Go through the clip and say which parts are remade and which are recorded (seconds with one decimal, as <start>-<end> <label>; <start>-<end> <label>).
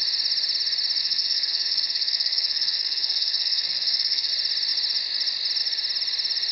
0.0-1.0 recorded; 1.0-4.3 remade; 4.3-6.5 recorded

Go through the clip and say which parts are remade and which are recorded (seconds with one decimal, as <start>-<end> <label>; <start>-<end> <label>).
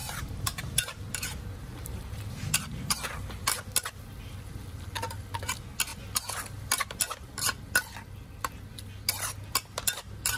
0.0-2.5 remade; 2.5-10.4 recorded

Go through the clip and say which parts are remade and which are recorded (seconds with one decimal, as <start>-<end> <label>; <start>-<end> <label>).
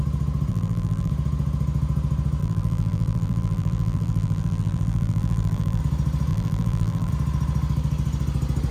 0.0-0.5 recorded; 0.5-1.1 remade; 1.1-2.4 recorded; 2.4-5.8 remade; 5.8-6.3 recorded; 6.3-7.1 remade; 7.1-8.7 recorded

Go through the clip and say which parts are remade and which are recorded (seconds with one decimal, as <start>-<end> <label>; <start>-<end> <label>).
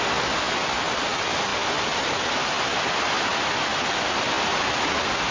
0.0-1.5 recorded; 1.5-4.3 remade; 4.3-5.3 recorded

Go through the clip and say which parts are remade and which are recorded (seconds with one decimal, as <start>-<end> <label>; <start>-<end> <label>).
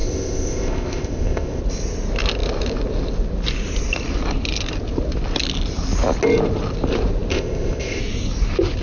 0.0-1.6 remade; 1.6-7.3 recorded; 7.3-8.0 remade; 8.0-8.8 recorded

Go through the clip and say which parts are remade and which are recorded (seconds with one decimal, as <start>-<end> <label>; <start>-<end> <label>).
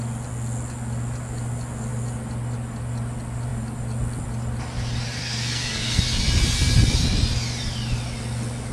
0.0-5.2 recorded; 5.2-6.0 remade; 6.0-8.7 recorded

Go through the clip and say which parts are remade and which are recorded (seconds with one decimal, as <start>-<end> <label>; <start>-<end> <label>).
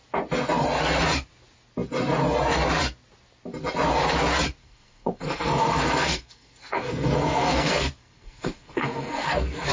0.0-4.6 recorded; 4.6-9.7 remade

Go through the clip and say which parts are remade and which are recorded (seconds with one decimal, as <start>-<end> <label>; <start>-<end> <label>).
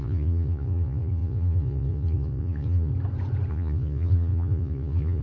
0.0-2.9 remade; 2.9-3.5 recorded; 3.5-5.2 remade